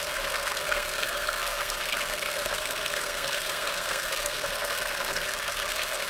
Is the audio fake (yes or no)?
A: yes